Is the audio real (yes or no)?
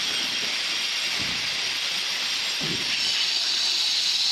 yes